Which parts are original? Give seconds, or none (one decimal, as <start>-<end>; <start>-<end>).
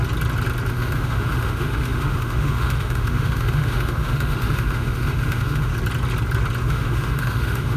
0.0-0.7; 5.7-6.6